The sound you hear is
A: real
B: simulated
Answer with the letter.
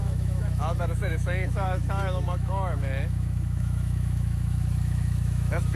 B